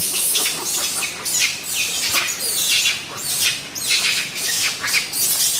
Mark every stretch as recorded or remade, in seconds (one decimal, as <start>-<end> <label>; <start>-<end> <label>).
0.0-0.5 remade; 0.5-3.9 recorded; 3.9-4.6 remade; 4.6-5.6 recorded